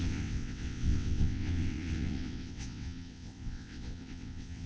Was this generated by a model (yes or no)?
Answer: yes